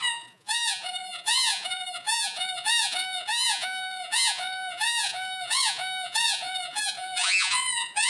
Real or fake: fake